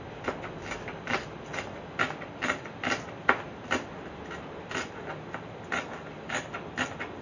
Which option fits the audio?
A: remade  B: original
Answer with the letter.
B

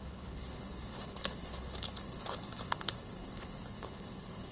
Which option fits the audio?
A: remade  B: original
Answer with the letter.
A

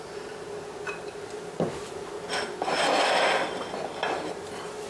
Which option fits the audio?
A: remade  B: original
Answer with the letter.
B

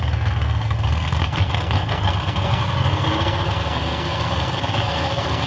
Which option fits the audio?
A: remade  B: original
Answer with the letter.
A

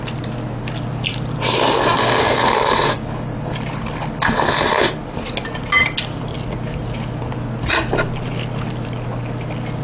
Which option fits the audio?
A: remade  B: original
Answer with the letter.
B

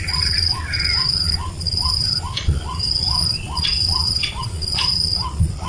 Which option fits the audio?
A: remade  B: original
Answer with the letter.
A